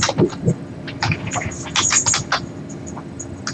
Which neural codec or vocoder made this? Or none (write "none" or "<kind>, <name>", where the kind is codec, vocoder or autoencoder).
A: none